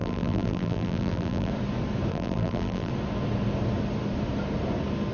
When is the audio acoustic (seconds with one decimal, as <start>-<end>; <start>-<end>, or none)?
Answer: 1.5-2.1; 2.9-5.1